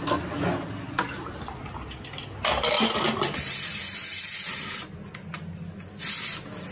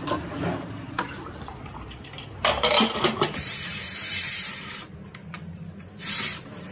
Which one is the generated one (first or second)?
second